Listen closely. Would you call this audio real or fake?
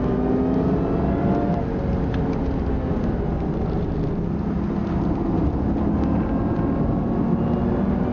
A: real